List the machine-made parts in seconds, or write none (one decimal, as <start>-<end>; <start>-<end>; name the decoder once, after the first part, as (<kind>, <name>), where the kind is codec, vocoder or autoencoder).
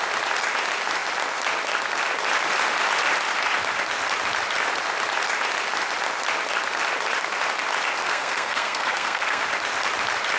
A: 8.0-9.4 (codec, SNAC)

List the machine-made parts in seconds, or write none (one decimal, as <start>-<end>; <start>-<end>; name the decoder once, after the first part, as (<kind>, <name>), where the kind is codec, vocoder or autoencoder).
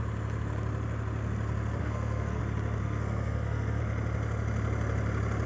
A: 1.8-2.4 (codec, SNAC); 2.8-3.8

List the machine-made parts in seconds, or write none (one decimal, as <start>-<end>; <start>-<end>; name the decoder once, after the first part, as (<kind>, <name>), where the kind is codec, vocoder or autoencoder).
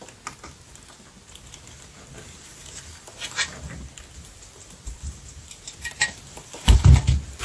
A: none